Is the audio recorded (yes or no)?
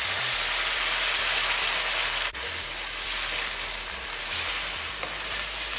yes